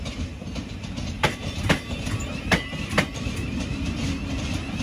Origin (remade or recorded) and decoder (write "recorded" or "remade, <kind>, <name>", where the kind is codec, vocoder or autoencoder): recorded